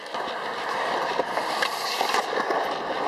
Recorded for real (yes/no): yes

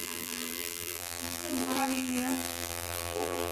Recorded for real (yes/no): no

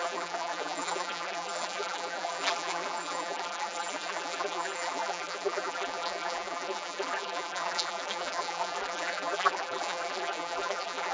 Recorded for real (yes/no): no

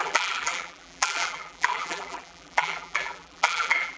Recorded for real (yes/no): no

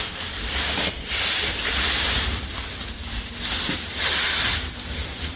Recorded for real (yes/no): no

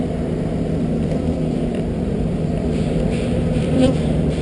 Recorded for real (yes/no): no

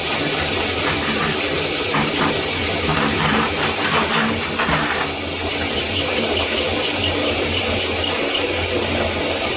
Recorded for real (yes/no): no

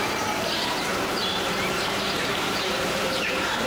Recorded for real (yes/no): no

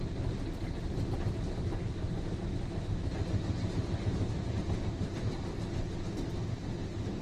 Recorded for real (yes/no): yes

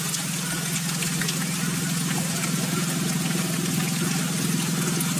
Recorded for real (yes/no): yes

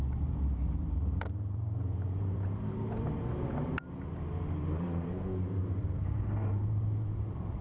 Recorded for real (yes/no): no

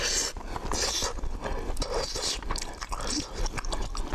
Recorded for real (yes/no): yes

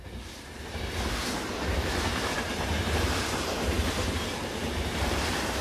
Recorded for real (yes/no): no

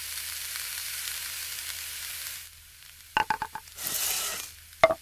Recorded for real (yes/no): yes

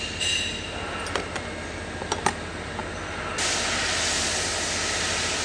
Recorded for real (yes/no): yes